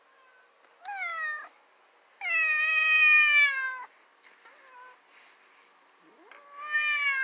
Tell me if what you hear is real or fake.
real